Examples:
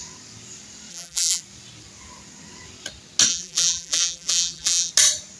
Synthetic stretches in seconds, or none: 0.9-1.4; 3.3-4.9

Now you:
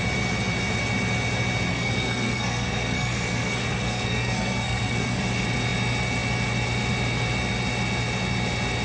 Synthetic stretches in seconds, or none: 1.7-5.2

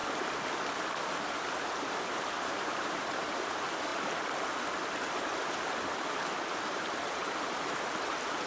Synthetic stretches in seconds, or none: 1.1-3.9; 4.9-8.5

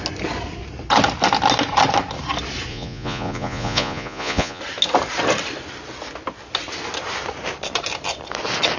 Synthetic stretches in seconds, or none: 2.7-4.6